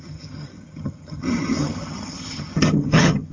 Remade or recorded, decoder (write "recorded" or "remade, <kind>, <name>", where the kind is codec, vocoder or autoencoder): remade, vocoder, HiFi-GAN